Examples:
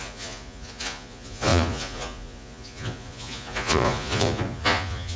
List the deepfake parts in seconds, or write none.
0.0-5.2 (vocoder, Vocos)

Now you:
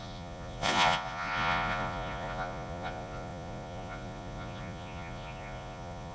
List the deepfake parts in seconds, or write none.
0.0-6.1 (vocoder, Vocos)